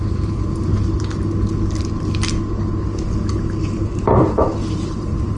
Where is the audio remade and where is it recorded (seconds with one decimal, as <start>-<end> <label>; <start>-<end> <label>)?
0.0-0.7 remade; 0.7-3.8 recorded; 3.8-5.4 remade